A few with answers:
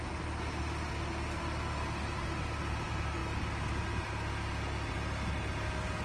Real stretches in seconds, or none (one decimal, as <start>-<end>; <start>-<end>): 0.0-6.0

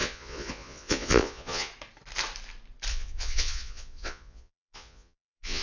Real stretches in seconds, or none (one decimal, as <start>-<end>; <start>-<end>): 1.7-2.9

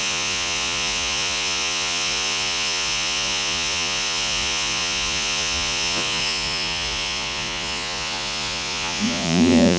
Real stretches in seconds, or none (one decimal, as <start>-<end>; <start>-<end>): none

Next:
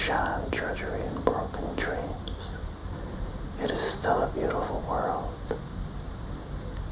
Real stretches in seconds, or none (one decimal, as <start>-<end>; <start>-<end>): none

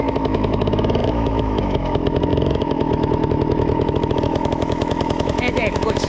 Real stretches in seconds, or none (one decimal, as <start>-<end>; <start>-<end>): none

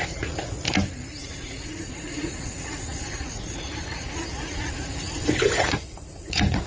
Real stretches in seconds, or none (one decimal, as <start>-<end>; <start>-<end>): 0.4-1.2